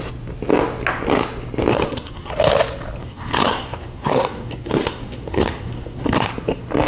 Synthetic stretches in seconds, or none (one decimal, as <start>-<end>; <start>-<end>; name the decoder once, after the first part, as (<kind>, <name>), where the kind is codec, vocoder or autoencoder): 1.7-2.3 (codec, SNAC); 3.0-6.3